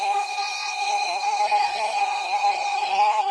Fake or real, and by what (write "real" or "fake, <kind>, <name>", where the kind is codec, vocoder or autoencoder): fake, codec, SNAC